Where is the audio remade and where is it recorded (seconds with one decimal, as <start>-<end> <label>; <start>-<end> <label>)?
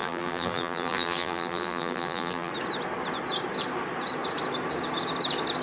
0.0-2.5 remade; 2.5-5.6 recorded